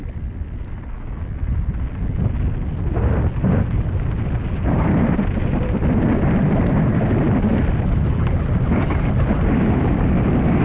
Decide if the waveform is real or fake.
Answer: real